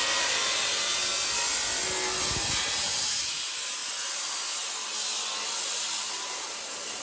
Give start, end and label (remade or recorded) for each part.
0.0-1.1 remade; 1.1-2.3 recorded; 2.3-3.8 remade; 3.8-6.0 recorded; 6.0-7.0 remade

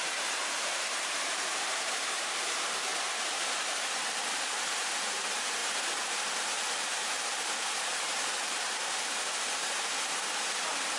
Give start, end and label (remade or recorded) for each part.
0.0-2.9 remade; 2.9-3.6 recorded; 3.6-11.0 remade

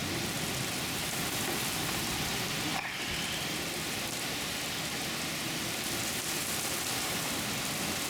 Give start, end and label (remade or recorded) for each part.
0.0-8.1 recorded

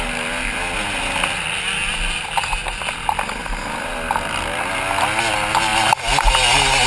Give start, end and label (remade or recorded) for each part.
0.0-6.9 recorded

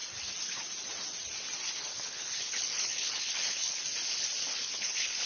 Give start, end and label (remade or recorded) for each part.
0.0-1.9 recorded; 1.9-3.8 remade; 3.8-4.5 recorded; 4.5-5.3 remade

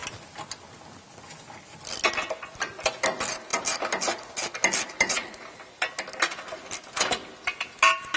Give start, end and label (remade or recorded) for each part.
0.0-8.2 recorded